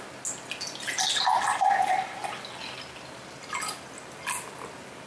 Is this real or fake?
real